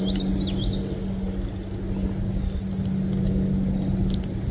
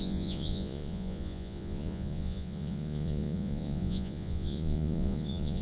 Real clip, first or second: first